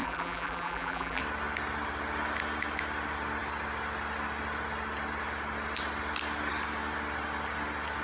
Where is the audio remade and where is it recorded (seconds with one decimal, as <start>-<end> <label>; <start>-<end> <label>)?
0.0-1.2 remade; 1.2-8.0 recorded